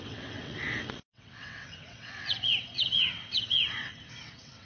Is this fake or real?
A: fake